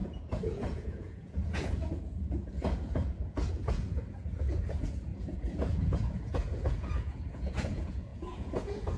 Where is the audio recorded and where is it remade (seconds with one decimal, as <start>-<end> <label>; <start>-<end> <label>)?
0.0-9.0 remade